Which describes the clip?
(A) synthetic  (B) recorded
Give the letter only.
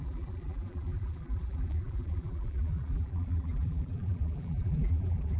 A